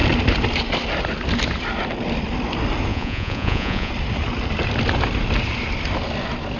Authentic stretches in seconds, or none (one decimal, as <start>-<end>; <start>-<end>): 0.0-2.9; 3.9-6.6